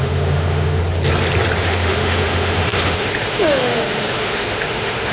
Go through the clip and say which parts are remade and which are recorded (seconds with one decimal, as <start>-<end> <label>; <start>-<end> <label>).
0.0-0.8 remade; 0.8-1.6 recorded; 1.6-5.1 remade